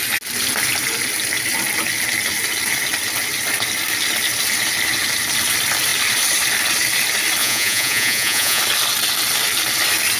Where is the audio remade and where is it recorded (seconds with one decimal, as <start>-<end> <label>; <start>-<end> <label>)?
0.0-7.4 recorded; 7.4-8.6 remade; 8.6-10.2 recorded